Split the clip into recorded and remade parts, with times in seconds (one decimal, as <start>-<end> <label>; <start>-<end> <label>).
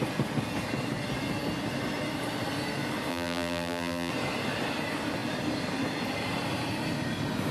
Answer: 0.0-3.1 recorded; 3.1-4.1 remade; 4.1-7.5 recorded